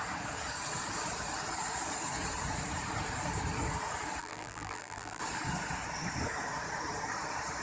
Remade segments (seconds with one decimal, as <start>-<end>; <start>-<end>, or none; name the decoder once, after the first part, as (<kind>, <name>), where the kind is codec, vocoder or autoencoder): 4.2-5.2 (vocoder, BigVGAN v2)